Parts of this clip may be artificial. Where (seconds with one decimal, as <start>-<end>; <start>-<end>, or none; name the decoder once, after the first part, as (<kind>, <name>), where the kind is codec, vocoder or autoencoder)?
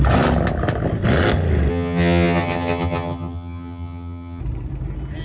1.7-4.4 (vocoder, HiFi-GAN)